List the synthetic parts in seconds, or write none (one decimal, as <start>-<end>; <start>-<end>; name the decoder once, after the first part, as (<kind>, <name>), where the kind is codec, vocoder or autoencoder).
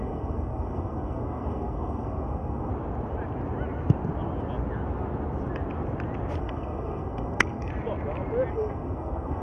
0.0-2.7 (codec, SNAC); 6.4-7.7; 8.5-9.4